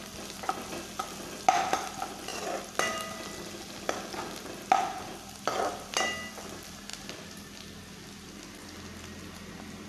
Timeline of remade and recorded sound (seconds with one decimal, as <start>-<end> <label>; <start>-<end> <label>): 0.0-9.9 recorded